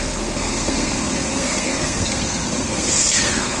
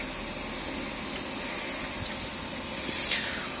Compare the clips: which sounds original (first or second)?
second